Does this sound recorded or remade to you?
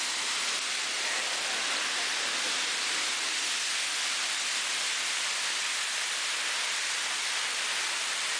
recorded